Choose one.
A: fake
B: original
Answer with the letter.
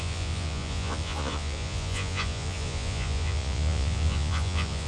A